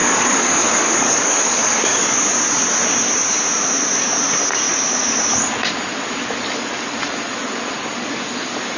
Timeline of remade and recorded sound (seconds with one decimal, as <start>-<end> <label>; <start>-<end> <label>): 0.0-2.2 remade; 2.2-8.8 recorded